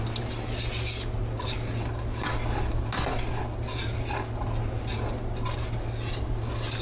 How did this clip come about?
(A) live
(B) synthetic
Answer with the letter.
A